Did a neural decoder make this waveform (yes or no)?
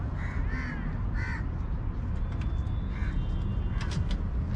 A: no